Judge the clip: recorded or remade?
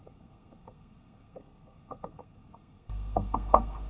remade